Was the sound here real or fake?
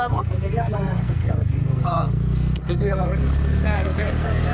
fake